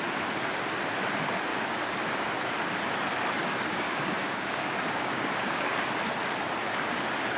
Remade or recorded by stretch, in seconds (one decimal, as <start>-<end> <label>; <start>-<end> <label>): 0.0-1.5 recorded; 1.5-2.0 remade; 2.0-3.4 recorded; 3.4-5.7 remade; 5.7-7.4 recorded